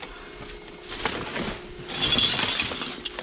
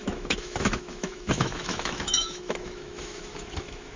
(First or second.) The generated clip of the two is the second